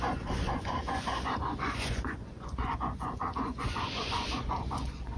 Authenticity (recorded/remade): remade